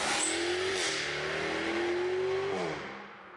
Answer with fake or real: real